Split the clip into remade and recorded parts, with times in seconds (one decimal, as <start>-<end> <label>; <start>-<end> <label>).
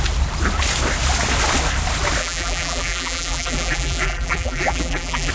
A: 0.0-2.2 recorded; 2.2-5.3 remade